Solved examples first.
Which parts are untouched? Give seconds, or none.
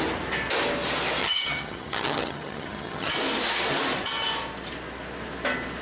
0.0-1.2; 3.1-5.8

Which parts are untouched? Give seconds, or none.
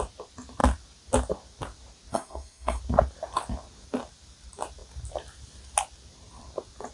0.0-2.1; 2.8-6.9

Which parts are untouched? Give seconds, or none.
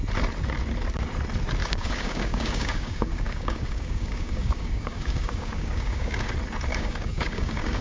0.0-1.6; 6.3-6.7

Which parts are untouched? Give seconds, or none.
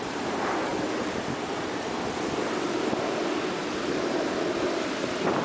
0.7-3.2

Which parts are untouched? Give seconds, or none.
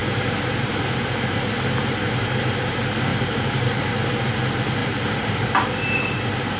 0.7-3.1; 3.9-4.8; 5.5-6.6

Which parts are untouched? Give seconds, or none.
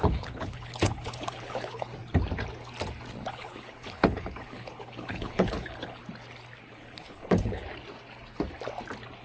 1.9-3.3; 6.0-6.7; 7.6-9.2